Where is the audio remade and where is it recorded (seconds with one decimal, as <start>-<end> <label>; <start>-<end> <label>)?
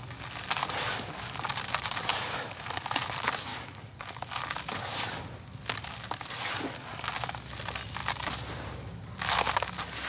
0.0-3.5 recorded; 3.5-4.1 remade; 4.1-10.1 recorded